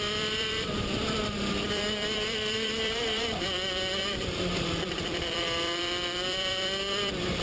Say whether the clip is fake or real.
fake